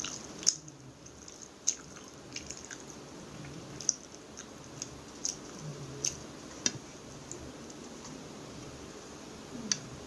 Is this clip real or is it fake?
real